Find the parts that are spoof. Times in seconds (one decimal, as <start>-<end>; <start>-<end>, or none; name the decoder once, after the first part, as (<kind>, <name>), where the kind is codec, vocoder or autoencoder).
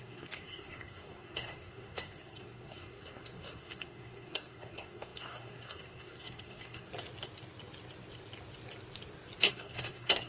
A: 0.0-6.9 (codec, SNAC); 9.5-10.3